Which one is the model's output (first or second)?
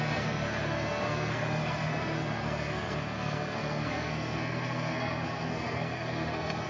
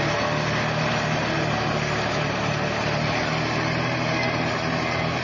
first